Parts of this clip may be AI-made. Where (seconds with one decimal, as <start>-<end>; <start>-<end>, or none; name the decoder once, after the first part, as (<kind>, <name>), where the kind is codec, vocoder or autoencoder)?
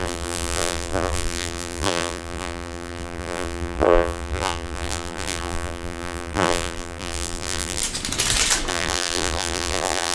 0.0-7.8 (vocoder, BigVGAN v2); 8.7-10.1